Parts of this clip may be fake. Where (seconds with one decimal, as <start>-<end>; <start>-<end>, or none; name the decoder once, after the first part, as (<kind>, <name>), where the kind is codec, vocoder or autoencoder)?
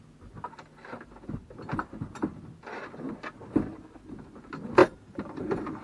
4.8-5.8 (vocoder, BigVGAN v2)